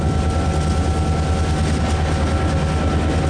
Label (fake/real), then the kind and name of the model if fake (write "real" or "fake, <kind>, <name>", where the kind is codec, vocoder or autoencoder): real